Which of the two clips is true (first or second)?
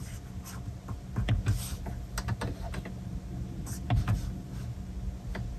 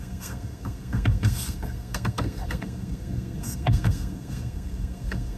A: first